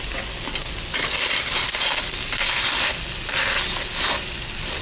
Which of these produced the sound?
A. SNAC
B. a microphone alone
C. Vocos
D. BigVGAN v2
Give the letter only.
B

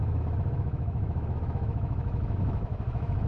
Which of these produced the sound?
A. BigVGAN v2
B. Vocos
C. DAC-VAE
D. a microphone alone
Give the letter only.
C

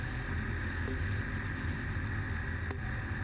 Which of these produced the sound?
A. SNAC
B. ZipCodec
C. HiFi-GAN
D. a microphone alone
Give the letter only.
D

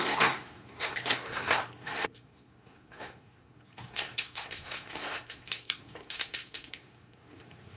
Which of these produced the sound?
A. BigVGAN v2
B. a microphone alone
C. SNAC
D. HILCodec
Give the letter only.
C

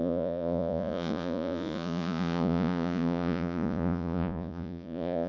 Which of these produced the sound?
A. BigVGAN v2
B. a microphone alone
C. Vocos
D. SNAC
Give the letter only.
C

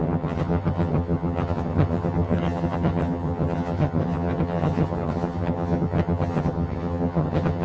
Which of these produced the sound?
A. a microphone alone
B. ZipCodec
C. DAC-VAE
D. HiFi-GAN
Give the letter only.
D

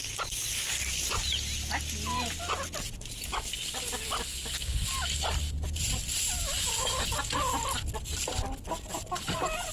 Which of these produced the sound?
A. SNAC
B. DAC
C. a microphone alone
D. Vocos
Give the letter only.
C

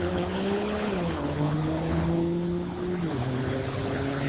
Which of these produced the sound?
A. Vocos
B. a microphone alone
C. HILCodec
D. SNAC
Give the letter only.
C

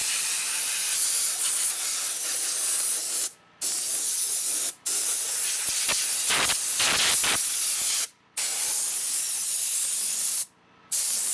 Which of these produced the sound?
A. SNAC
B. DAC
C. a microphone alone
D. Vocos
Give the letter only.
C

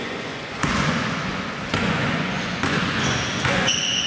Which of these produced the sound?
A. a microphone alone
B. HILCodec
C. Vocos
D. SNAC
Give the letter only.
C